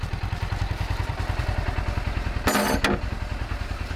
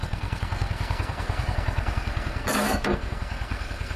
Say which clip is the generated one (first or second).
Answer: second